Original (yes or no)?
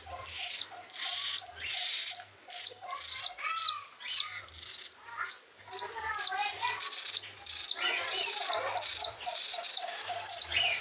yes